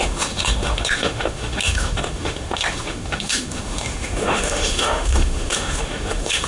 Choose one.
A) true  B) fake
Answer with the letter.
B